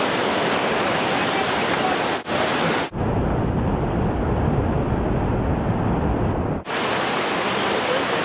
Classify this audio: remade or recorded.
recorded